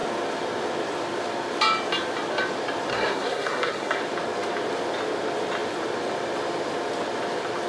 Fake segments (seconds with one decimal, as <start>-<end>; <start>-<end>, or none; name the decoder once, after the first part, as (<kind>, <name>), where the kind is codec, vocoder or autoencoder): 2.9-4.0 (codec, SNAC)